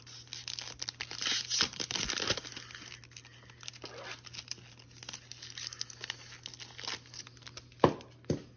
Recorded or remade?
recorded